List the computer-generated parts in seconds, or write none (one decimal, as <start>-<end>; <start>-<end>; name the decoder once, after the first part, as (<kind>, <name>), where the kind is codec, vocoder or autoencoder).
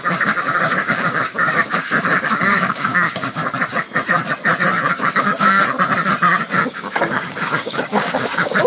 0.0-3.4 (codec, DAC); 4.9-5.6; 6.7-8.7